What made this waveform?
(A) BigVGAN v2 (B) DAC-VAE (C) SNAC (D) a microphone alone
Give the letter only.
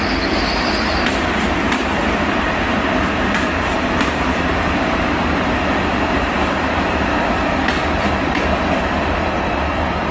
A